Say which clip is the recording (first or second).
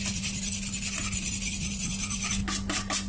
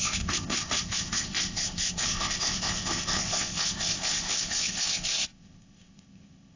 first